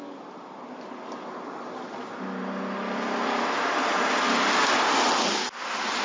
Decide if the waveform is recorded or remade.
recorded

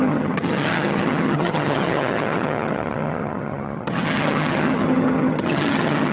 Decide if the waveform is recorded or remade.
remade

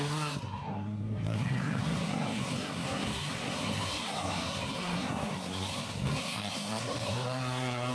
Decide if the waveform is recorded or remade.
remade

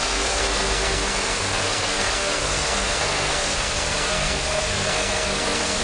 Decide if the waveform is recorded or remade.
remade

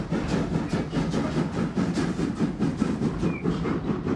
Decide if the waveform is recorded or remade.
recorded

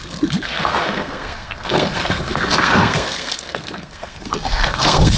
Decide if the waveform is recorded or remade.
remade